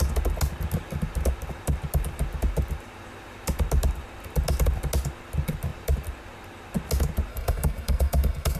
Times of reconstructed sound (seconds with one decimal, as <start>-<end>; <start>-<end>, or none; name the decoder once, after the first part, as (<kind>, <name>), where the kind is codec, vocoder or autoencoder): 7.3-8.6 (codec, SNAC)